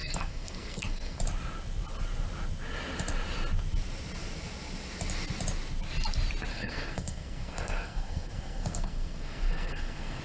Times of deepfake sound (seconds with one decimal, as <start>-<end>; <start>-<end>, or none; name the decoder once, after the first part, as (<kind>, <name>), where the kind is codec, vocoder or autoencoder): 0.0-1.2 (codec, SNAC); 6.5-10.2